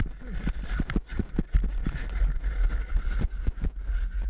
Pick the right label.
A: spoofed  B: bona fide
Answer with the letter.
B